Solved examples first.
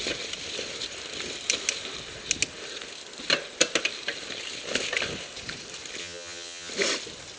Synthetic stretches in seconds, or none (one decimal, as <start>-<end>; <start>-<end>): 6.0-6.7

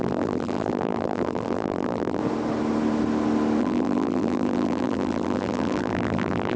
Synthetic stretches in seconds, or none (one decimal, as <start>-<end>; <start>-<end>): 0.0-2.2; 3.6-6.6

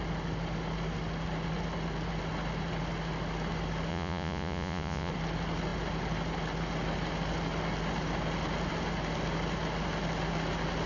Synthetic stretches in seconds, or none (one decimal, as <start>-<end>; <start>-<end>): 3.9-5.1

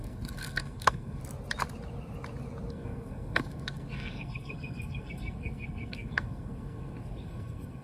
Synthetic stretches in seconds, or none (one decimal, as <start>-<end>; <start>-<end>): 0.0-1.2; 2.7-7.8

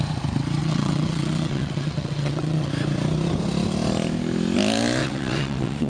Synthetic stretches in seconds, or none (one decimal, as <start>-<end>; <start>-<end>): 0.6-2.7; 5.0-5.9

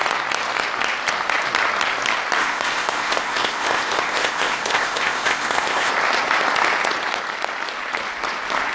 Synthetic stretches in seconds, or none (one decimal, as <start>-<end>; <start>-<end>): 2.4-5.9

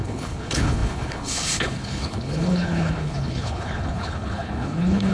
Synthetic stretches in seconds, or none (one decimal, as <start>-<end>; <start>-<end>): 0.0-5.1

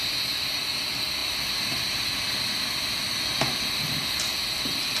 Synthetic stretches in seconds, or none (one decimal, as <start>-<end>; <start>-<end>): none